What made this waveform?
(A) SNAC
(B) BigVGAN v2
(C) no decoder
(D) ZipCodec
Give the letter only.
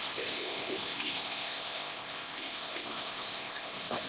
D